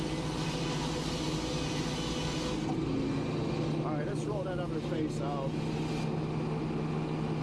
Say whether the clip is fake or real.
real